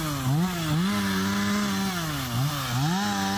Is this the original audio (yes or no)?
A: yes